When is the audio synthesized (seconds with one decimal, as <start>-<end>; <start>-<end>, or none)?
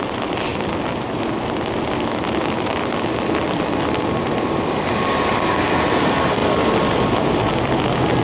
6.4-7.1